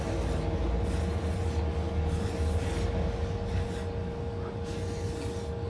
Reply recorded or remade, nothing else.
recorded